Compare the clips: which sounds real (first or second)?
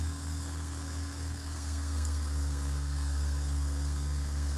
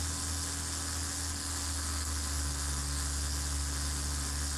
second